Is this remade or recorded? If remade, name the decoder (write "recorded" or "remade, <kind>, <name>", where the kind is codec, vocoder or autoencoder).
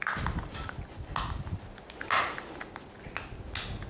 recorded